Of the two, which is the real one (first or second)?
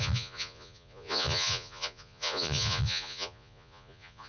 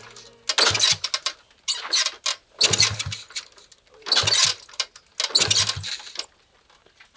second